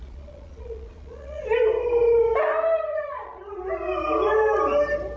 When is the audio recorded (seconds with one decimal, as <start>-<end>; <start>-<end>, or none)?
1.4-2.9; 3.6-5.2